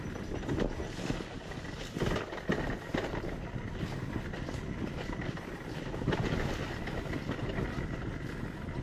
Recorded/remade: recorded